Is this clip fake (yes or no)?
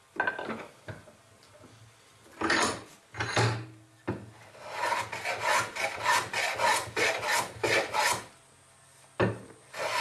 no